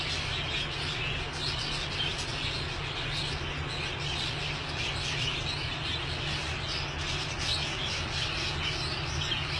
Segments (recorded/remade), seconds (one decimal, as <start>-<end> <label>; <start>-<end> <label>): 0.0-9.6 recorded